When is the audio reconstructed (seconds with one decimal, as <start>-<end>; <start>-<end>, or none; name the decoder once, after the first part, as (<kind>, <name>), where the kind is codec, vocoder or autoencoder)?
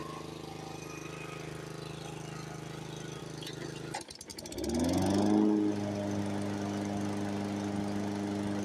none